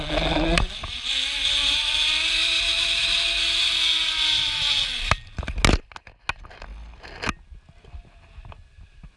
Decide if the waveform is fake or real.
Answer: real